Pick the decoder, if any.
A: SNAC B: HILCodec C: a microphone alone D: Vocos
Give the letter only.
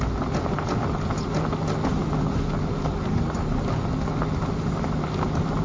C